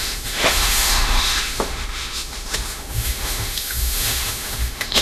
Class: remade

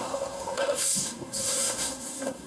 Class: remade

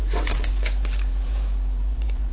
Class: remade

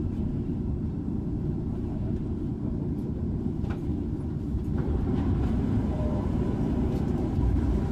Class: remade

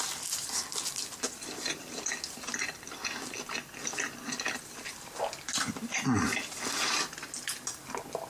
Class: recorded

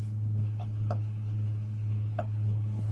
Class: remade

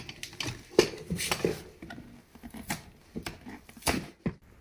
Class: recorded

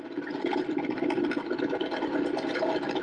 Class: recorded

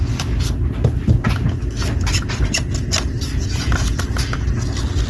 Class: recorded